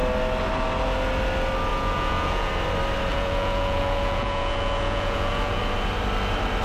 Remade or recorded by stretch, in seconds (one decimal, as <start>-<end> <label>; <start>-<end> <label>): 0.0-1.7 recorded; 1.7-2.5 remade; 2.5-3.1 recorded; 3.1-5.6 remade; 5.6-6.6 recorded